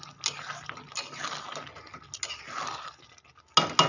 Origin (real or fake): real